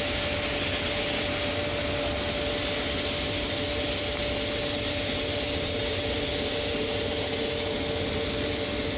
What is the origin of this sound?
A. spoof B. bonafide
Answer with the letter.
B